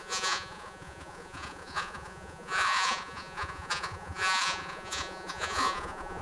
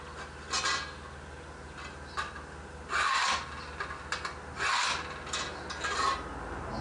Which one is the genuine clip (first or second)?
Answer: second